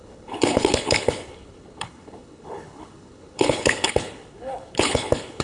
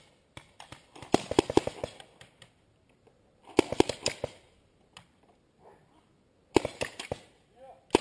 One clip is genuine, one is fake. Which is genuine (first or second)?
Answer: second